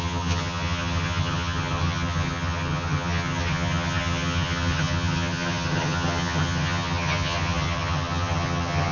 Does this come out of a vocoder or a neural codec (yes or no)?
yes